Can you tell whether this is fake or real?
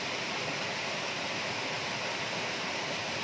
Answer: real